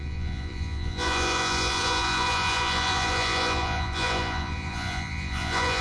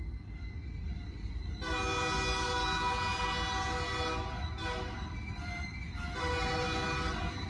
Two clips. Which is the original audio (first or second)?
second